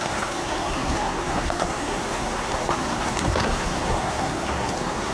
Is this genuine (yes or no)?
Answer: no